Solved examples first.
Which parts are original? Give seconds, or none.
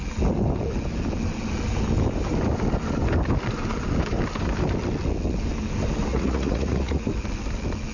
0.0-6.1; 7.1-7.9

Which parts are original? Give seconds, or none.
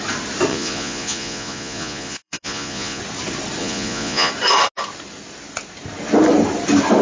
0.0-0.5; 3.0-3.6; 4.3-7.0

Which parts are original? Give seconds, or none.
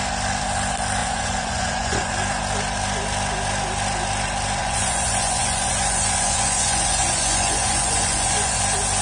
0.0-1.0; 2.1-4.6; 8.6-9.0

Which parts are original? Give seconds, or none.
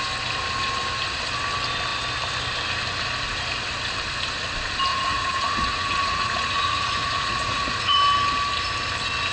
0.0-4.9; 8.0-9.3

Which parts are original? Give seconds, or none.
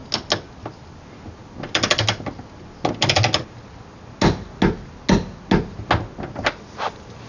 0.0-7.3